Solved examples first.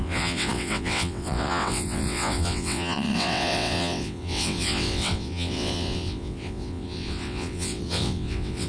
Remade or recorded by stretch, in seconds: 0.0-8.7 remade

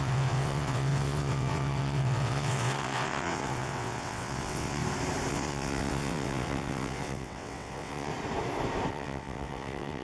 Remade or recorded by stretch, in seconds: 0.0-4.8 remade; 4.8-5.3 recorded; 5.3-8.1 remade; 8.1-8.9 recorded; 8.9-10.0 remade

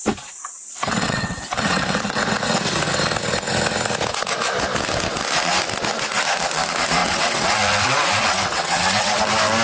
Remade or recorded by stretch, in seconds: 0.0-0.5 recorded; 0.5-2.2 remade; 2.2-7.0 recorded; 7.0-9.2 remade; 9.2-9.6 recorded

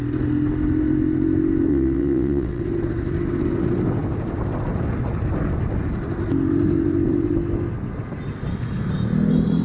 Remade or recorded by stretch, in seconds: 0.0-1.7 recorded; 1.7-2.6 remade; 2.6-9.6 recorded

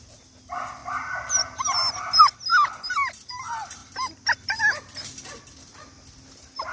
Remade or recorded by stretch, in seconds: 0.0-6.7 recorded